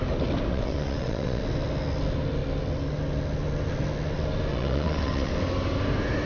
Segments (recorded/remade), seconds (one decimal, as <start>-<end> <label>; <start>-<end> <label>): 0.0-0.5 recorded; 0.5-1.4 remade; 1.4-4.5 recorded; 4.5-5.3 remade; 5.3-6.3 recorded